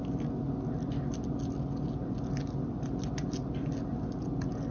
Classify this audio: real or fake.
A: real